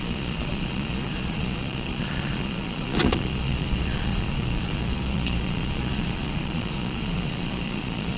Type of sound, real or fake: fake